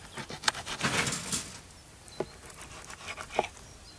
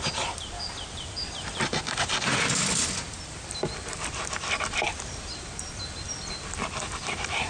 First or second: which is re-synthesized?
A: second